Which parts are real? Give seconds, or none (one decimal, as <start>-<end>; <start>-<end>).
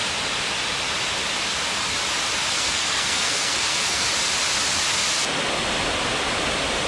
0.0-2.5; 4.1-6.9